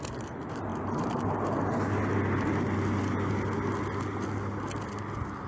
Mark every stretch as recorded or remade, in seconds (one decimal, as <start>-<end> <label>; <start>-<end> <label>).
0.0-5.5 recorded